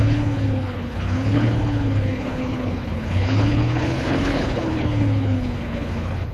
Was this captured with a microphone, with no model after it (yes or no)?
no